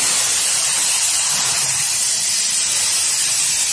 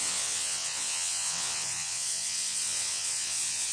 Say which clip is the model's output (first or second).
second